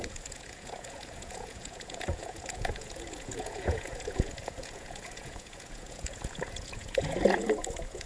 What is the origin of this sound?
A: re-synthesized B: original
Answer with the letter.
A